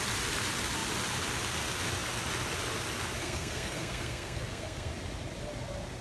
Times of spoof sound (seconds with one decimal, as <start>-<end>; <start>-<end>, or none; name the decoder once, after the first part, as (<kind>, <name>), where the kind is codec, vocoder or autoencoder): 3.2-4.9 (codec, SNAC)